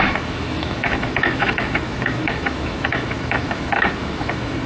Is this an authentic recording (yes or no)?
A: no